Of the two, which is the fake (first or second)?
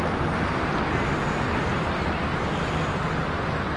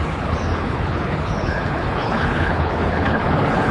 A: second